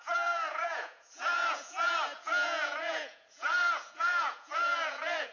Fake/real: fake